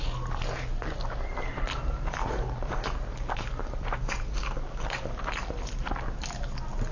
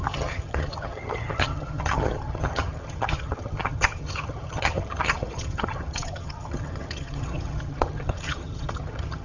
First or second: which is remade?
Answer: second